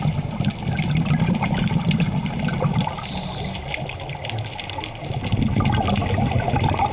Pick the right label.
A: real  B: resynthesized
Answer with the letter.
A